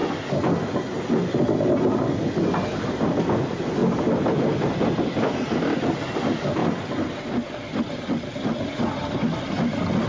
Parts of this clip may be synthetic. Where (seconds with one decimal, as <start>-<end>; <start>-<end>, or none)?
none